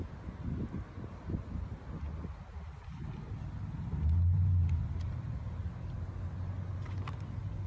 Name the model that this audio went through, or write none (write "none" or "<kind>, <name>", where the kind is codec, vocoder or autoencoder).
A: none